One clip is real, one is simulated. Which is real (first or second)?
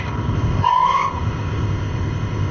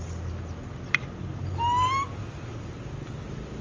second